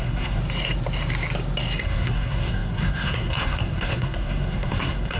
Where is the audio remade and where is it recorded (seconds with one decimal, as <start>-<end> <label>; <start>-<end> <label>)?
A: 0.0-0.4 remade; 0.4-1.8 recorded; 1.8-5.2 remade